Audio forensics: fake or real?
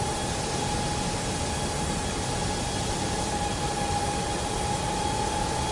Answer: real